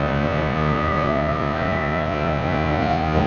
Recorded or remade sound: remade